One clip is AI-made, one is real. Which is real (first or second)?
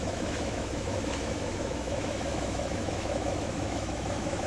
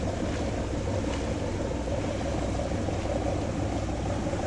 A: second